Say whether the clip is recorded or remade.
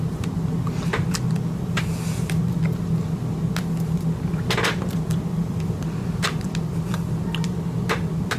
recorded